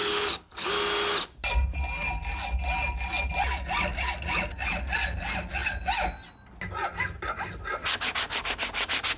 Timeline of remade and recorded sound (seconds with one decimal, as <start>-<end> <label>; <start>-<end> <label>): 0.0-0.7 remade; 0.7-9.2 recorded